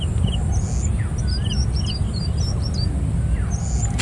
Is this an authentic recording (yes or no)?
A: yes